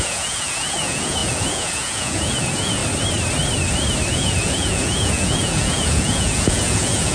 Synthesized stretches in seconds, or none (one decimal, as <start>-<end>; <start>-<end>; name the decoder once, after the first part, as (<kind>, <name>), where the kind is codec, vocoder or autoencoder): 0.0-2.8 (vocoder, Vocos); 4.1-7.1